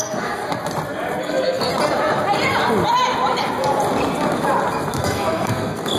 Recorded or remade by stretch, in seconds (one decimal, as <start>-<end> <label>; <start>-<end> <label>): 0.0-0.4 remade; 0.4-1.2 recorded; 1.2-1.7 remade; 1.7-5.0 recorded; 5.0-6.0 remade